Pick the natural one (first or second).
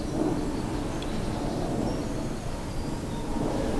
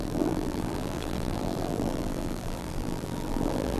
first